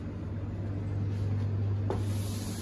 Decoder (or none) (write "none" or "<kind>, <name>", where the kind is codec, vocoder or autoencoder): none